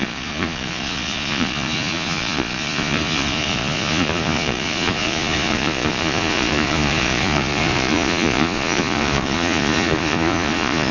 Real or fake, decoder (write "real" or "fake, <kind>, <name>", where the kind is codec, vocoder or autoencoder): fake, vocoder, Vocos